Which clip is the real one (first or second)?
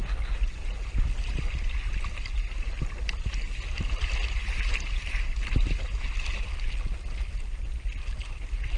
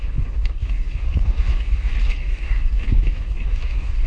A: first